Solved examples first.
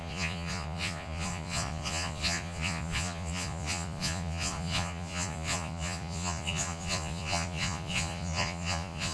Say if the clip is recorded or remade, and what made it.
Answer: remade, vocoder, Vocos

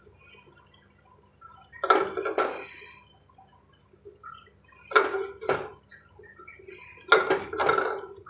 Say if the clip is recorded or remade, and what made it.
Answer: recorded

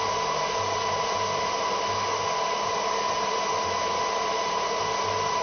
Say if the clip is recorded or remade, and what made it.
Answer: recorded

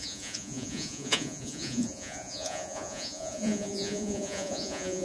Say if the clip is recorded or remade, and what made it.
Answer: remade, vocoder, Vocos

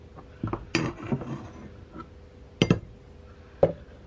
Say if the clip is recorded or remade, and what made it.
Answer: recorded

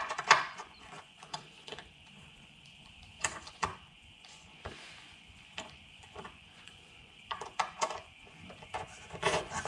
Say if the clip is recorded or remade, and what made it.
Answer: remade, vocoder, Vocos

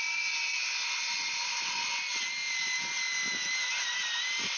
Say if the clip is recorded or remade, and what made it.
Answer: recorded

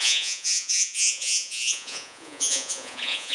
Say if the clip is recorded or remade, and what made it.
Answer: remade, vocoder, Vocos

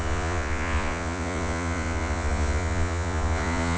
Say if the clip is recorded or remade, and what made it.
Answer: remade, vocoder, Vocos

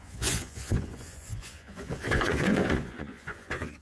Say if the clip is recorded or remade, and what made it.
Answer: remade, vocoder, Vocos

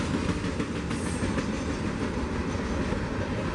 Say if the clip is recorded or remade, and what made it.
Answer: recorded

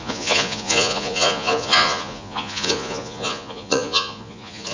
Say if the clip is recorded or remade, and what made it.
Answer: remade, vocoder, Vocos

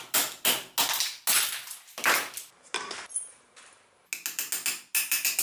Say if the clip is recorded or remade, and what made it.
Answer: recorded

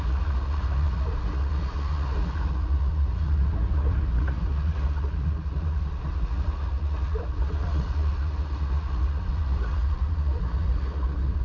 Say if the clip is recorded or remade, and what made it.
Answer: remade, vocoder, Vocos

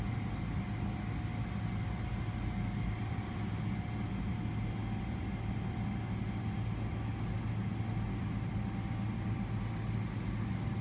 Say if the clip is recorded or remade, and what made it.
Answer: recorded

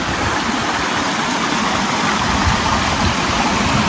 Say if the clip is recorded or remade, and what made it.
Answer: recorded